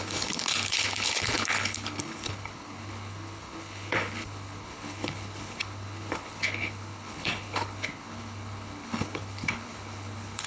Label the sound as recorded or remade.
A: remade